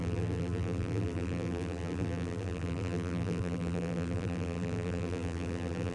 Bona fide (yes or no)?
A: no